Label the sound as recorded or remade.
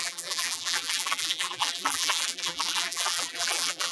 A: remade